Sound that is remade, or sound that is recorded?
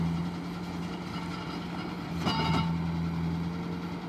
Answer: recorded